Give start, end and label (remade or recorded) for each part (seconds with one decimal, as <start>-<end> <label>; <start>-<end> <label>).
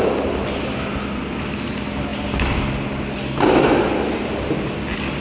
0.0-5.2 recorded